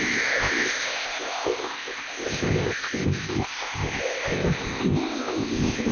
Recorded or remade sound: remade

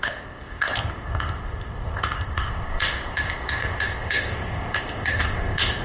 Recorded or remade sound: remade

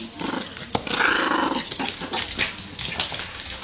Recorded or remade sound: recorded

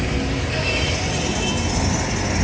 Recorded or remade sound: recorded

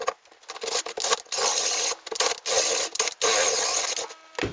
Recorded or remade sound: recorded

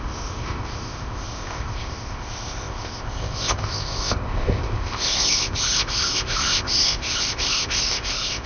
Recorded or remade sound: remade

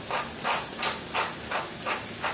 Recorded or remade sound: recorded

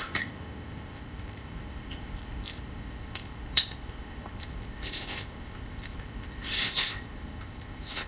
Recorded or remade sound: remade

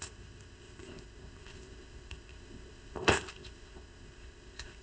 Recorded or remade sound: remade